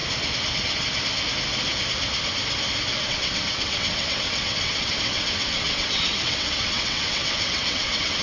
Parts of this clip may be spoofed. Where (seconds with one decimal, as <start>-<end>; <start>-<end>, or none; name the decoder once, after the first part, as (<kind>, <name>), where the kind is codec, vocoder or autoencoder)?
3.0-8.2 (vocoder, WaveNeXt)